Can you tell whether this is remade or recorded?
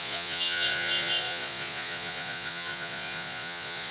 remade